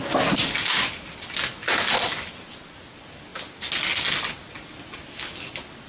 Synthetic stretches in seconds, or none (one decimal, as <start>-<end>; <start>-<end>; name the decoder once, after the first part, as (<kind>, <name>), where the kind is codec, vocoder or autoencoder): none